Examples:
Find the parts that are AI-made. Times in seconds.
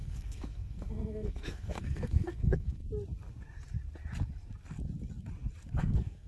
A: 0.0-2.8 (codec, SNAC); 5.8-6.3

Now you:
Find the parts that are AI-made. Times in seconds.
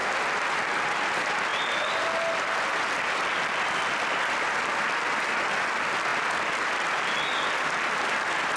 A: none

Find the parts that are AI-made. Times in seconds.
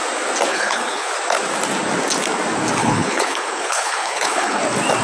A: 0.5-1.1 (codec, HILCodec); 2.8-4.6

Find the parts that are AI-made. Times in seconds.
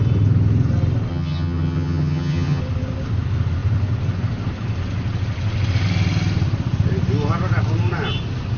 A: 1.1-2.6 (vocoder, HiFi-GAN)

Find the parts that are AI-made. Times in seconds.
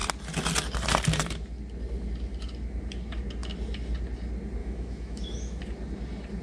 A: 4.6-5.6 (autoencoder, DAC-VAE)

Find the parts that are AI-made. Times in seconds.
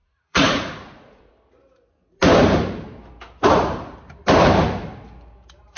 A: 0.0-1.3 (vocoder, Vocos)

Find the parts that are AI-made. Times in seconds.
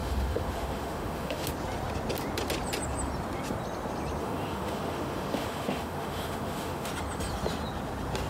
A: 0.0-1.5 (autoencoder, DAC-VAE); 4.2-6.9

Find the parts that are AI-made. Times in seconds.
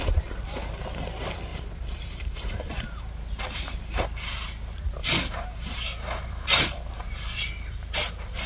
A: 1.5-2.7 (vocoder, BigVGAN v2); 5.0-7.1